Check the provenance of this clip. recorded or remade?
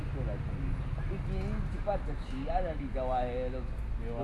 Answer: recorded